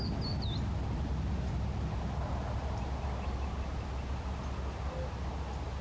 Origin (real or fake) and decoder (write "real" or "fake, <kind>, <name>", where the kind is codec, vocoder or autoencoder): real